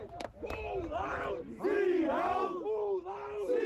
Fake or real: real